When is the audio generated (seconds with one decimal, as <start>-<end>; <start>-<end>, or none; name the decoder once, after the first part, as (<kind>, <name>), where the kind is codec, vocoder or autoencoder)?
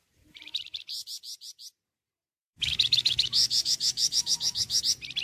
2.4-4.8 (autoencoder, DAC-VAE)